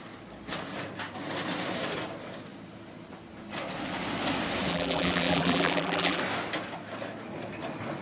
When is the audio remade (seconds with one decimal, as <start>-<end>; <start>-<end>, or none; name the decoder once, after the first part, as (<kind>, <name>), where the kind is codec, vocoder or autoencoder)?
4.7-6.2 (vocoder, BigVGAN v2)